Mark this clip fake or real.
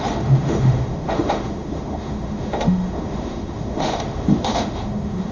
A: fake